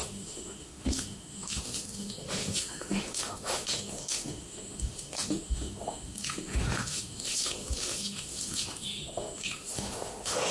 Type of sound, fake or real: fake